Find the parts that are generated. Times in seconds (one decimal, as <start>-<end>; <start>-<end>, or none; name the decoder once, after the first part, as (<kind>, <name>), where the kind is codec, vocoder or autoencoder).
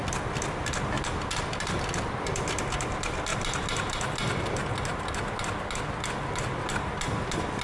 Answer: none